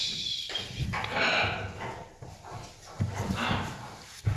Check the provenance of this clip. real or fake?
real